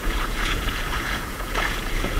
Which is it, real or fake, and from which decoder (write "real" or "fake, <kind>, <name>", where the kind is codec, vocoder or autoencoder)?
fake, vocoder, Vocos